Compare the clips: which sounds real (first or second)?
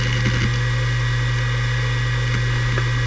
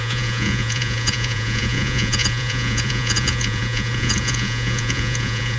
first